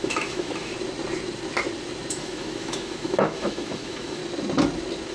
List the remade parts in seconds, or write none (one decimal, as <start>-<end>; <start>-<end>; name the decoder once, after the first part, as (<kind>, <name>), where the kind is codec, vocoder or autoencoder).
0.0-0.7 (autoencoder, DAC-VAE); 2.1-4.2